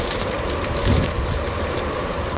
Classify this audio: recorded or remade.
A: remade